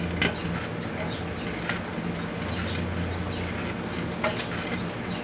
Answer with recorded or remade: recorded